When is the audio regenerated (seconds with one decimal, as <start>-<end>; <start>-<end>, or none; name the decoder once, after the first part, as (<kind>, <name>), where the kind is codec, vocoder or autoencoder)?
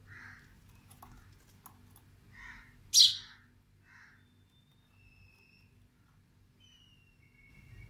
none